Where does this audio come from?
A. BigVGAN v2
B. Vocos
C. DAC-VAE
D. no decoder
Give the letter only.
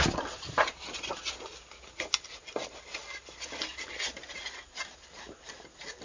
D